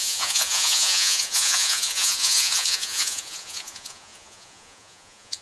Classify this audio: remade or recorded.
remade